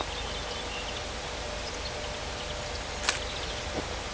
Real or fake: real